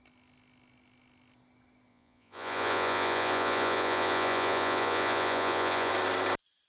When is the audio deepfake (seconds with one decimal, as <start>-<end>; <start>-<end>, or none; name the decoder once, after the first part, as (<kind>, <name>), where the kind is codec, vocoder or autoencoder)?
1.9-5.9 (vocoder, Vocos)